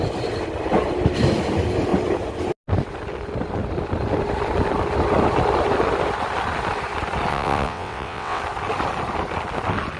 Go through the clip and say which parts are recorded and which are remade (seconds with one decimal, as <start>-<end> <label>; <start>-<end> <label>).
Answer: 0.0-7.3 recorded; 7.3-8.4 remade; 8.4-10.0 recorded